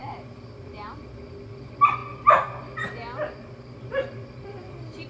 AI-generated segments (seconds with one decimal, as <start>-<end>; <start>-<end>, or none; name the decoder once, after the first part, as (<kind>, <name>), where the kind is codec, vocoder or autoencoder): 0.0-1.0 (vocoder, BigVGAN v2); 3.0-5.1

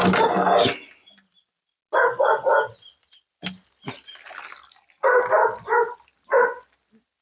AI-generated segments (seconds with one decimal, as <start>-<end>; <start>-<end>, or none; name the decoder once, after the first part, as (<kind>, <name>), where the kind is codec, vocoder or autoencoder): none